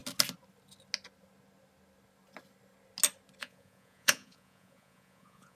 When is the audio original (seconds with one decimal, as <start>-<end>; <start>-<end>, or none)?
0.0-3.4